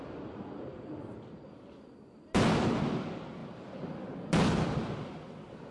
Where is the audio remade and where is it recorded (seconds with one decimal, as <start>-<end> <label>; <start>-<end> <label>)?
0.0-0.7 recorded; 0.7-2.2 remade; 2.2-5.7 recorded